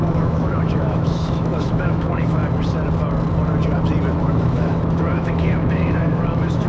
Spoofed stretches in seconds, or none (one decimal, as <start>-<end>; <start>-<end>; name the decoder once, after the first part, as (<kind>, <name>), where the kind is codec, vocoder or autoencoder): 0.0-2.4 (autoencoder, DAC-VAE); 4.2-6.7